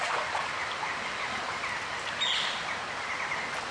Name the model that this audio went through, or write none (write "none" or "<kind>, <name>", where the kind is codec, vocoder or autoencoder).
none